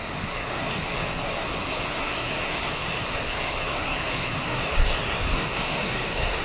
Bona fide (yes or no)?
no